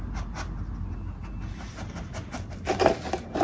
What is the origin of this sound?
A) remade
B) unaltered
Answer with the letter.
B